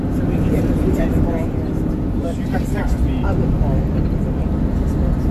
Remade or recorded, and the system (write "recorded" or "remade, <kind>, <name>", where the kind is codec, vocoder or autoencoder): recorded